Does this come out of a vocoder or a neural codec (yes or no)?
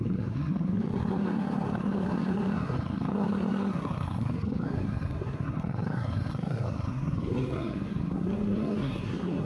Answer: yes